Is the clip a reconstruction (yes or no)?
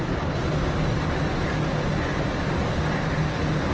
no